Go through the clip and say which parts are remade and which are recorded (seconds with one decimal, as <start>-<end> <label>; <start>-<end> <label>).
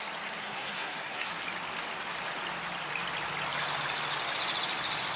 0.0-0.4 recorded; 0.4-1.3 remade; 1.3-5.2 recorded